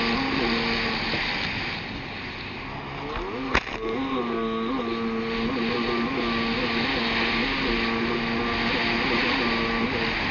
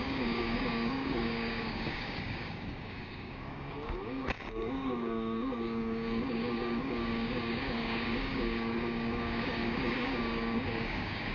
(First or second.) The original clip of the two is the first